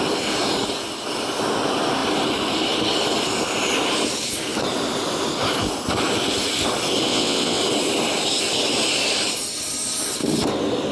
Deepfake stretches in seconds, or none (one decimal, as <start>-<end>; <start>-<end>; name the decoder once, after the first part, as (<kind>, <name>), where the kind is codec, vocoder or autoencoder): 7.1-7.6 (vocoder, WaveNeXt)